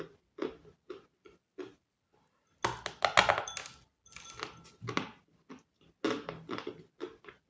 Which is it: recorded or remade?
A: recorded